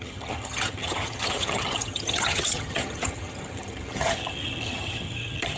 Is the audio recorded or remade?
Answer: remade